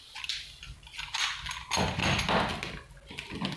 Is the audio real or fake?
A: real